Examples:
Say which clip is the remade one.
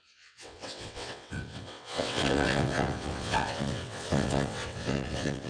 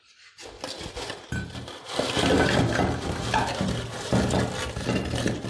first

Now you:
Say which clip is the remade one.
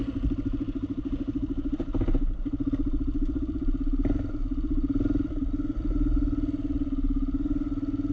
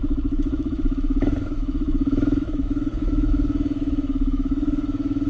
second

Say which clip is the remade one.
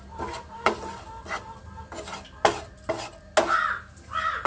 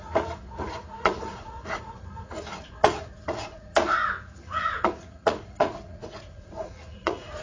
second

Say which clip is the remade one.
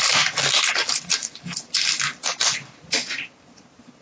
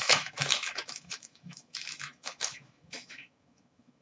second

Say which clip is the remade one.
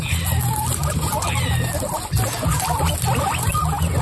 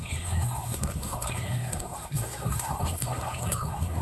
second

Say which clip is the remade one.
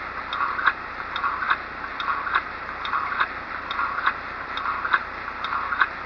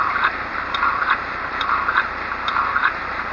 second